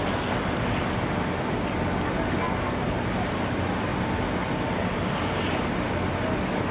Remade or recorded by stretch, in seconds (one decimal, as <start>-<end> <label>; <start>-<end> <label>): 0.0-6.7 recorded